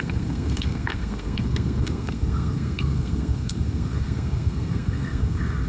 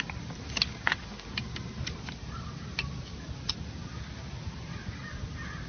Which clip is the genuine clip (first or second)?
second